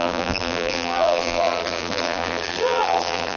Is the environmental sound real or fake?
fake